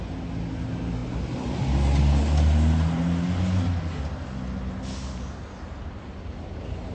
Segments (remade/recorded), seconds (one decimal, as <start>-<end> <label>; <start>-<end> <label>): 0.0-6.9 recorded